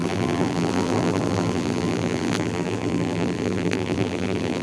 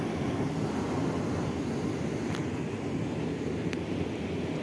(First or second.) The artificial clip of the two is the first